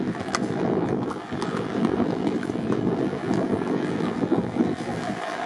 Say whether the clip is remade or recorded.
remade